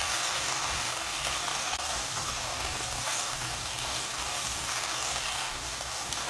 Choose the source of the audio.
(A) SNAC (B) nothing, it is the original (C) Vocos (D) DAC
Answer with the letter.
D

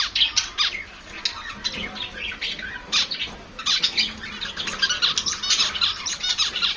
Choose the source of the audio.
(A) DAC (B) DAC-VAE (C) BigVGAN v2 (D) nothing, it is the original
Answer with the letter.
D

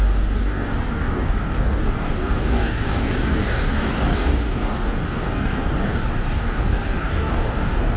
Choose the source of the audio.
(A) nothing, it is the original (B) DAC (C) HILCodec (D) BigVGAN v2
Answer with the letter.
B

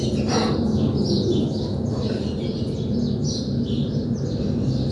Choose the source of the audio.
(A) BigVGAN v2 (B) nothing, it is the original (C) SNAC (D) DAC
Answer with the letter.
B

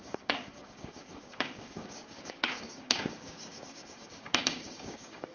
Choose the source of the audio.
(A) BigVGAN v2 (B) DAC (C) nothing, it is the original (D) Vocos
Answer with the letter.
B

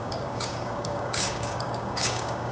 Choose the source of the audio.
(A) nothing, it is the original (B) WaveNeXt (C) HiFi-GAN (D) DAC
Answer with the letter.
D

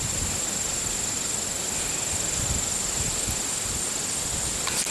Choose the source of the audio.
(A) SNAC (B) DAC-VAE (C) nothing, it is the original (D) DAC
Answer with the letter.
C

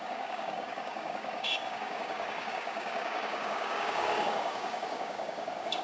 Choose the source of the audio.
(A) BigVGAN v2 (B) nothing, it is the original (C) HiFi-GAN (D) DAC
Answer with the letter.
D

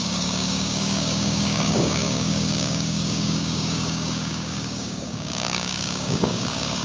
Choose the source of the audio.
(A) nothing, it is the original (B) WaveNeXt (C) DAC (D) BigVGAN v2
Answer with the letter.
C